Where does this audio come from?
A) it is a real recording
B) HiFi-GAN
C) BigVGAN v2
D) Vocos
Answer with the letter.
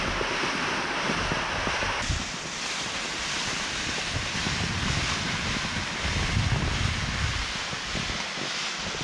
A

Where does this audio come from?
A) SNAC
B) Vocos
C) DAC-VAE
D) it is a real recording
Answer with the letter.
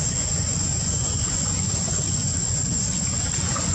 B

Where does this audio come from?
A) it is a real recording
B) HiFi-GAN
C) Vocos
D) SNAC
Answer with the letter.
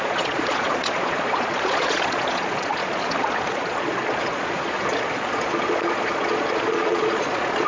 C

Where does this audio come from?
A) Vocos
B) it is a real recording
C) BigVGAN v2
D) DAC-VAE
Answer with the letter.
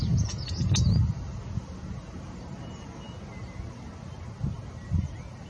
B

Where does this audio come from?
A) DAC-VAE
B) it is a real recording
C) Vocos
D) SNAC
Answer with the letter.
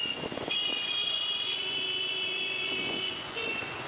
C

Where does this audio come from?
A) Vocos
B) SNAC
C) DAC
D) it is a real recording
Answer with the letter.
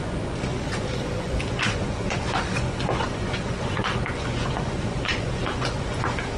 A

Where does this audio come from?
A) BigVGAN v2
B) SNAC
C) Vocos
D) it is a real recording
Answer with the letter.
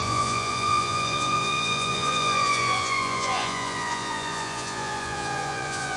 C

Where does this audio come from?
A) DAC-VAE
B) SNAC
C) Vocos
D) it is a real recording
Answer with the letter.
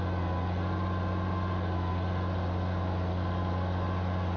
D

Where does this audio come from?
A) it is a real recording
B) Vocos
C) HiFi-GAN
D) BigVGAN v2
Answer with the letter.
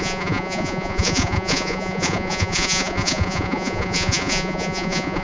B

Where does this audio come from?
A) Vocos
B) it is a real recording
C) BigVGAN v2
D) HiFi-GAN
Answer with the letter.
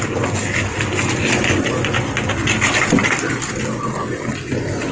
B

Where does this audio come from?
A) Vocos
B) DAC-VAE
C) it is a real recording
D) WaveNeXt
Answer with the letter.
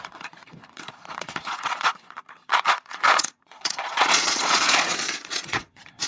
A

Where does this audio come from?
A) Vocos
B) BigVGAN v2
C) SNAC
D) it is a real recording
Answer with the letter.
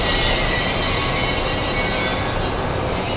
D